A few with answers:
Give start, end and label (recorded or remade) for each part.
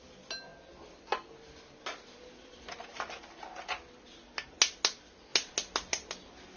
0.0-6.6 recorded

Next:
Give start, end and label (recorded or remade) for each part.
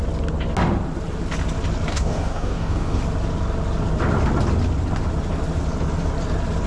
0.0-1.9 recorded; 1.9-3.0 remade; 3.0-6.7 recorded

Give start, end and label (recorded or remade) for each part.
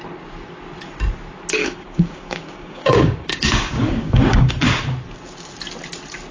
0.0-1.6 recorded; 1.6-4.5 remade; 4.5-6.3 recorded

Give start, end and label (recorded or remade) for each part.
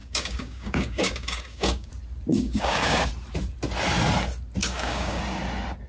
0.0-1.9 remade; 1.9-2.3 recorded; 2.3-3.1 remade; 3.1-4.6 recorded; 4.6-5.2 remade; 5.2-5.9 recorded